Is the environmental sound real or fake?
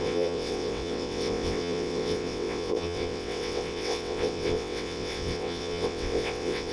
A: fake